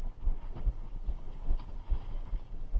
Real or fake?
real